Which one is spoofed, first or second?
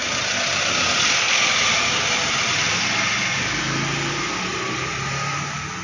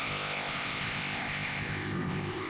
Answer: second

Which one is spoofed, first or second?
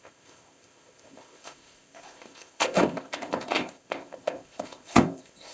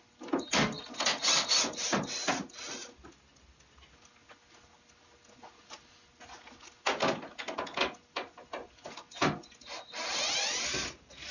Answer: first